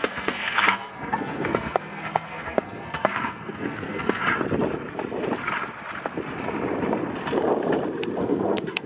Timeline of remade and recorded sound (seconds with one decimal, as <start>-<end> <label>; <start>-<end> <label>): 0.0-4.2 remade; 4.2-8.2 recorded; 8.2-8.9 remade